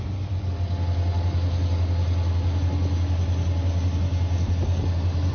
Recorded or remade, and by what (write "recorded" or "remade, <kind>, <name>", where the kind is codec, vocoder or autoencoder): recorded